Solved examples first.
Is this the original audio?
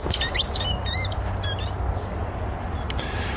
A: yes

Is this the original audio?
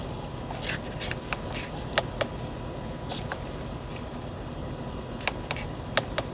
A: yes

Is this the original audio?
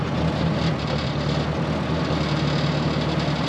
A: yes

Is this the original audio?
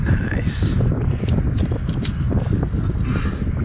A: yes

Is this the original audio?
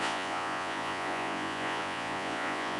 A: no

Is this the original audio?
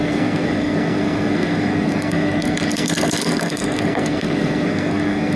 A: no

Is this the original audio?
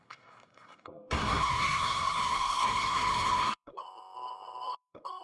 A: no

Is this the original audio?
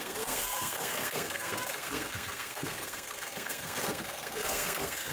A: no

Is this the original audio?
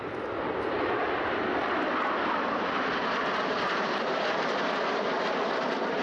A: yes